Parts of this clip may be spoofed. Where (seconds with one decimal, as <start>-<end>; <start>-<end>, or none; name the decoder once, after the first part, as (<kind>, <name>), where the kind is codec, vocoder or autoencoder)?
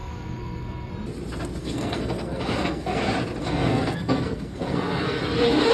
0.0-0.9 (codec, SNAC); 1.6-3.0; 3.4-5.2